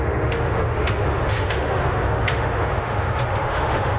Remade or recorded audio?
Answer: remade